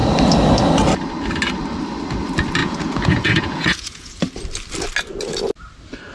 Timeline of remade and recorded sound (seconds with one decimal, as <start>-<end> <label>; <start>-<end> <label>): 0.0-2.6 recorded; 2.6-4.1 remade; 4.1-6.1 recorded